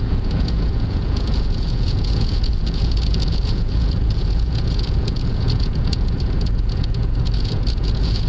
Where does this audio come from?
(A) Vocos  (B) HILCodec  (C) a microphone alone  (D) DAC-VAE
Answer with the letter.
A